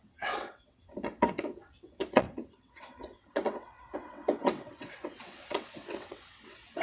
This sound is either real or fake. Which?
fake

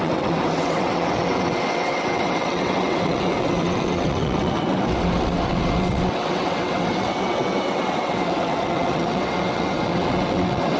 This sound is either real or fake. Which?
fake